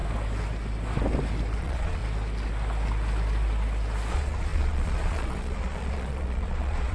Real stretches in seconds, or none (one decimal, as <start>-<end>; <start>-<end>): 0.0-1.6; 2.0-4.1